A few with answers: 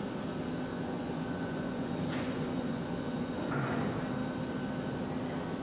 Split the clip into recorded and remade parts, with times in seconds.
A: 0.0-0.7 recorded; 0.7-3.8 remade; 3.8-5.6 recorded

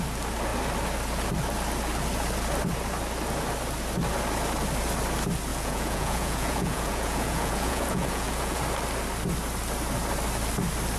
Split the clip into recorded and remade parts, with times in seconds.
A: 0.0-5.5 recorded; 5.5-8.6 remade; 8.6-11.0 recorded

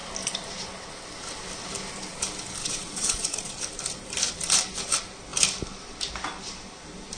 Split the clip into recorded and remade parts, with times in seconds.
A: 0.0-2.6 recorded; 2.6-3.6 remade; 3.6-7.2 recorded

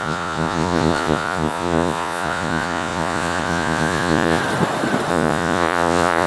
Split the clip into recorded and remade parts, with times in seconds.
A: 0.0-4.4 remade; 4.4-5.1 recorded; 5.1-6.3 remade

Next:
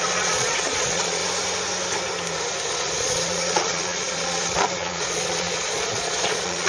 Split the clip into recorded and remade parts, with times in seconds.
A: 0.0-1.2 remade; 1.2-2.7 recorded; 2.7-6.7 remade